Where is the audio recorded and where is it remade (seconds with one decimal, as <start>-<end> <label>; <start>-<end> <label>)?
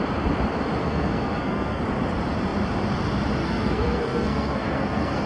0.0-0.8 recorded; 0.8-1.8 remade; 1.8-3.4 recorded; 3.4-5.3 remade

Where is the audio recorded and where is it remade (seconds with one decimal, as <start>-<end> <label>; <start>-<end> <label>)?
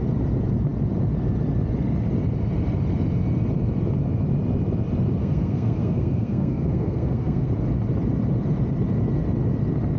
0.0-5.2 recorded; 5.2-7.5 remade; 7.5-10.0 recorded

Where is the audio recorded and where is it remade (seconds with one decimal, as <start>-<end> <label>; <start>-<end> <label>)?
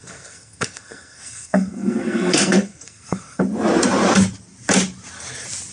0.0-3.4 remade; 3.4-5.7 recorded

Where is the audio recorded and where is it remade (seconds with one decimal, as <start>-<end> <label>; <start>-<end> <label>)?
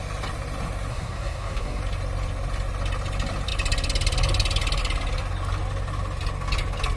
0.0-0.9 recorded; 0.9-1.8 remade; 1.8-7.0 recorded